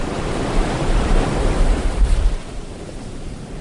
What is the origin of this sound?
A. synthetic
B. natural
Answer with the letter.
A